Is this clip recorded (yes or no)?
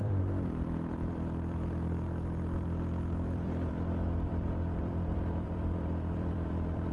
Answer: no